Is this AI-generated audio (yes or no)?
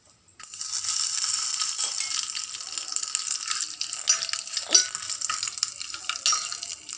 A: no